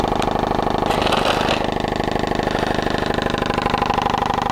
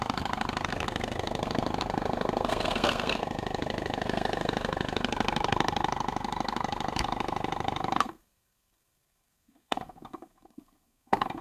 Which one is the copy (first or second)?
second